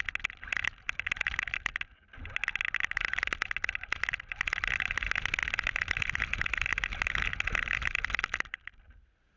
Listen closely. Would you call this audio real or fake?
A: real